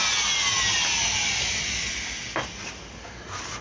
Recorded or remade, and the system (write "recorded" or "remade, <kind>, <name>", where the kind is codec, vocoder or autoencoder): recorded